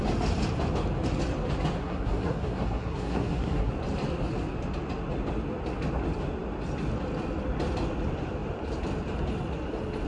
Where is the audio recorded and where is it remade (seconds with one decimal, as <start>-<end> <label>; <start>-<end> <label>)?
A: 0.0-1.8 recorded; 1.8-3.7 remade; 3.7-10.1 recorded